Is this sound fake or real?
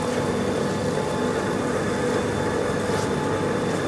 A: real